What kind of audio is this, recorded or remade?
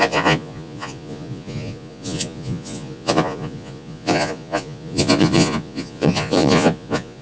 remade